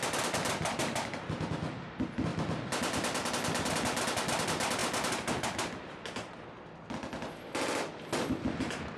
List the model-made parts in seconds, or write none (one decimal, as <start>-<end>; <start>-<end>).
2.3-3.3